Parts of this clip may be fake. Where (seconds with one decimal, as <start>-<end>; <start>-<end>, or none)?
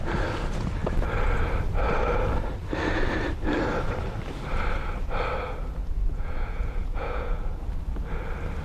5.8-7.6